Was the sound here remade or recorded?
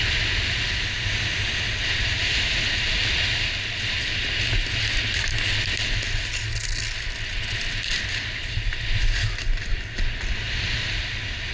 recorded